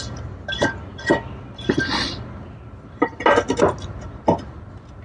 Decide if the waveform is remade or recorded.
recorded